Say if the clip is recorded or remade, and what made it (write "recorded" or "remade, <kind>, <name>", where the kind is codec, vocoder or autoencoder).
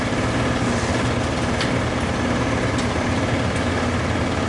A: recorded